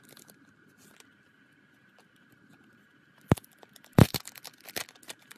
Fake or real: real